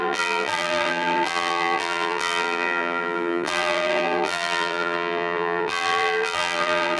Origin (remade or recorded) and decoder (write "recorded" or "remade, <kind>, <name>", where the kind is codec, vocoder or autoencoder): remade, vocoder, BigVGAN v2